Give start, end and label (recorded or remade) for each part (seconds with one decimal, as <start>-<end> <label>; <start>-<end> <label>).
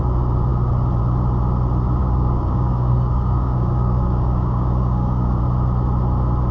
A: 0.0-2.0 recorded; 2.0-5.4 remade; 5.4-6.5 recorded